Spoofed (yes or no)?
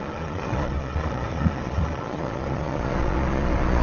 yes